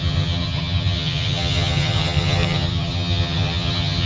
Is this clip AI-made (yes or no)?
yes